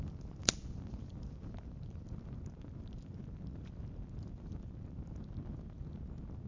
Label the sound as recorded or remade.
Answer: recorded